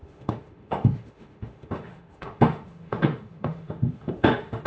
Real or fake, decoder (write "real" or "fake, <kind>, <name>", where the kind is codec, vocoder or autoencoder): fake, autoencoder, DAC-VAE